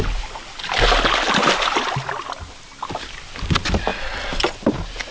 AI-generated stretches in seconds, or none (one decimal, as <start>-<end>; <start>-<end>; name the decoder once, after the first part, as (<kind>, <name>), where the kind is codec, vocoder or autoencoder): none